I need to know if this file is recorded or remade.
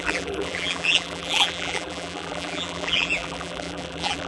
remade